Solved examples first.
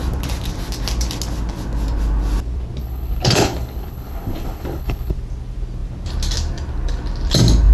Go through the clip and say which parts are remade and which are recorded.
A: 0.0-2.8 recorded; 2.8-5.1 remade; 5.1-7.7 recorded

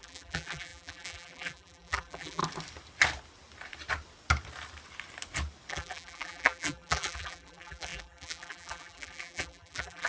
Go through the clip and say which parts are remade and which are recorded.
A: 0.0-2.4 remade; 2.4-5.7 recorded; 5.7-10.1 remade

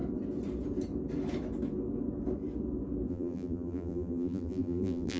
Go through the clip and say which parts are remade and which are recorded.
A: 0.0-3.1 recorded; 3.1-5.2 remade